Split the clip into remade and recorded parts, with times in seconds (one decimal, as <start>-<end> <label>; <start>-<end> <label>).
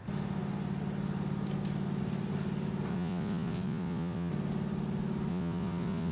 0.0-2.9 recorded; 2.9-4.3 remade; 4.3-5.3 recorded; 5.3-6.1 remade